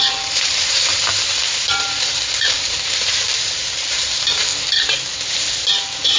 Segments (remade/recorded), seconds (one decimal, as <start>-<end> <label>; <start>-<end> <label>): 0.0-4.5 remade; 4.5-5.3 recorded; 5.3-6.2 remade